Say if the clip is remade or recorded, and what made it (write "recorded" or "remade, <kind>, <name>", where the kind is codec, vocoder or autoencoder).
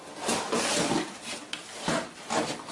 recorded